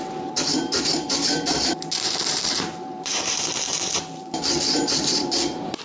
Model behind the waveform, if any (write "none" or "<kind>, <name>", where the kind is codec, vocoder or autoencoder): vocoder, BigVGAN v2